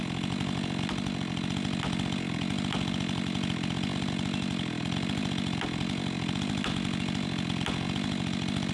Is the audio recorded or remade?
recorded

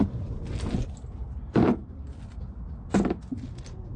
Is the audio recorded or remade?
recorded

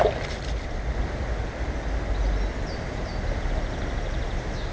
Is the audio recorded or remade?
recorded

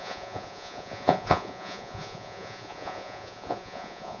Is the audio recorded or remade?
remade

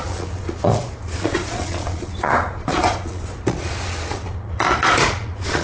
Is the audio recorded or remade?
remade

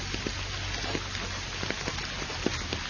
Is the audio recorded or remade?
recorded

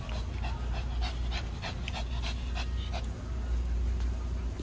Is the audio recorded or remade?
recorded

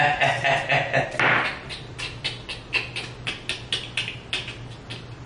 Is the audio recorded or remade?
recorded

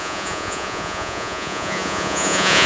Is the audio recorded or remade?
remade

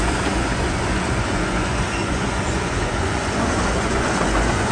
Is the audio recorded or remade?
remade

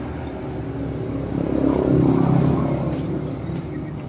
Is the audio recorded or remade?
recorded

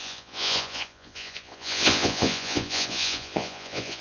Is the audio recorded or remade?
remade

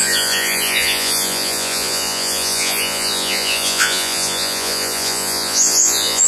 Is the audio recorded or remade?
remade